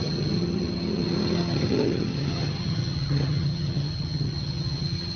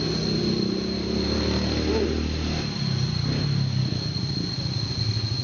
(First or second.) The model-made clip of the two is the first